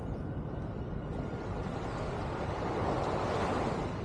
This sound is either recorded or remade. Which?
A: recorded